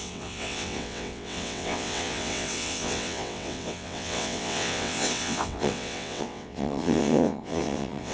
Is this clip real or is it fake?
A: fake